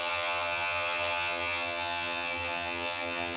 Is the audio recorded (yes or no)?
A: no